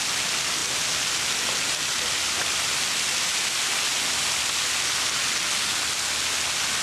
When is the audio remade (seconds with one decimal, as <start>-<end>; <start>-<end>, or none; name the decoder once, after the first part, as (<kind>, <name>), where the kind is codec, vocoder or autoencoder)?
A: none

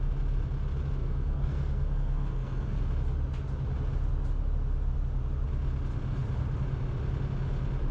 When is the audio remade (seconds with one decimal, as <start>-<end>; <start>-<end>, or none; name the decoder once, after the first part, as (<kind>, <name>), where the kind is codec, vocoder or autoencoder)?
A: 1.0-2.8 (codec, SNAC)

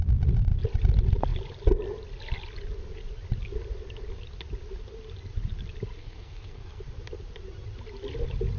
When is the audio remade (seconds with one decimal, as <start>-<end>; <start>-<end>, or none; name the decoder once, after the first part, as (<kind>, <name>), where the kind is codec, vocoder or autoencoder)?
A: 6.0-6.8 (codec, SNAC)

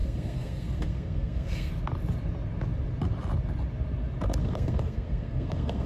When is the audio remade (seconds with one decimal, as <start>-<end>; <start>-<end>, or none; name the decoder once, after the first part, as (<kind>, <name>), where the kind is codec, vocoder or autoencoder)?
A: 0.0-1.7 (codec, SNAC); 4.4-5.9

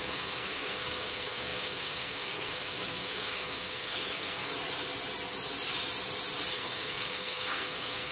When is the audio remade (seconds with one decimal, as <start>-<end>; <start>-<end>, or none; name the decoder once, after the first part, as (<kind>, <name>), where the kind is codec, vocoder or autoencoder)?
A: 0.0-4.5 (codec, SNAC); 6.5-8.1

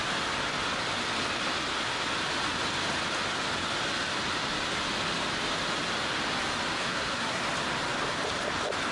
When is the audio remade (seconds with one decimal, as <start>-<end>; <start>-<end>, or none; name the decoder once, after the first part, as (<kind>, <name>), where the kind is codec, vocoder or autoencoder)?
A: 6.8-7.4 (codec, SNAC)

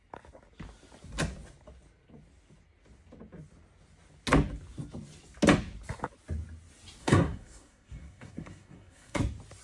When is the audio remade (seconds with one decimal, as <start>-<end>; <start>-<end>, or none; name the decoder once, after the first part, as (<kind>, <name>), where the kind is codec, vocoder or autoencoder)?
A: 7.0-9.2 (codec, SNAC)